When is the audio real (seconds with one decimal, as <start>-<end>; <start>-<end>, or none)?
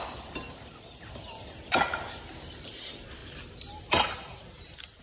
0.0-5.0